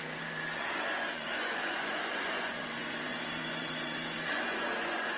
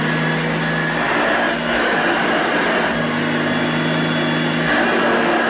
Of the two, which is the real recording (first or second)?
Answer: second